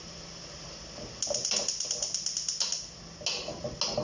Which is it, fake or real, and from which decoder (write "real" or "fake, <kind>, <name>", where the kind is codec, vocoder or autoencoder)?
real